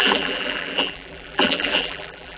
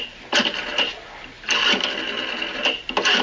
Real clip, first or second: second